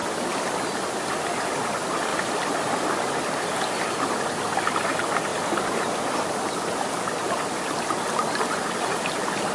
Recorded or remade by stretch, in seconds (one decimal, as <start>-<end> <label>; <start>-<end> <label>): 0.0-9.5 recorded